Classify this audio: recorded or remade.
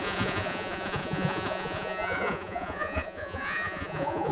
remade